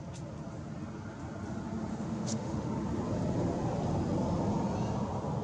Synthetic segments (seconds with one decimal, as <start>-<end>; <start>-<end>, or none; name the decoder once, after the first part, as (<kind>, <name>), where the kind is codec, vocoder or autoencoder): 1.9-2.7 (autoencoder, DAC-VAE)